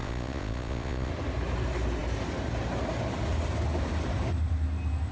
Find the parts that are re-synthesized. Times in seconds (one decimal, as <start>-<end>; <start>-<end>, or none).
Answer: 0.0-1.1